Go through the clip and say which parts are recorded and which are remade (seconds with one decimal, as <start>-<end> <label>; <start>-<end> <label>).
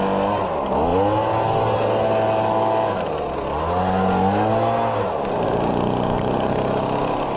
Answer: 0.0-7.4 recorded